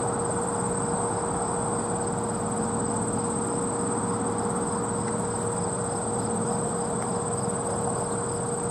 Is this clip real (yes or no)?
yes